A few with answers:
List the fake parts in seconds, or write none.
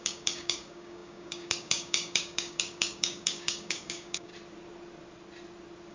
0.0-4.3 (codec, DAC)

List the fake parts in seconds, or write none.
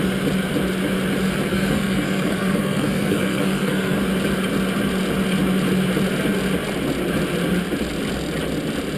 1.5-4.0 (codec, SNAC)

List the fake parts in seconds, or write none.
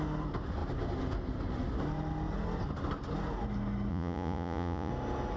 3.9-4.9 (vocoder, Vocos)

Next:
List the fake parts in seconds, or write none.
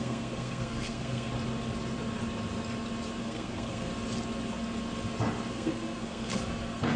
0.0-1.3 (codec, SNAC); 3.2-3.9; 5.5-7.0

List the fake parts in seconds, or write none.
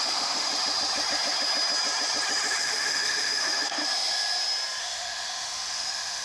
0.0-0.5 (autoencoder, DAC-VAE); 2.6-3.8; 4.8-6.2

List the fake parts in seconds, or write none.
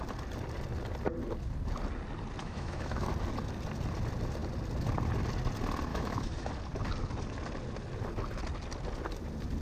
2.4-3.1 (autoencoder, DAC-VAE); 5.9-6.5